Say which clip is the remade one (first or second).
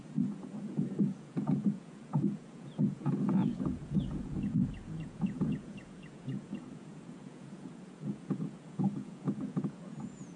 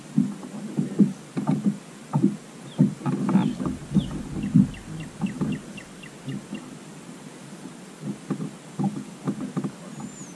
first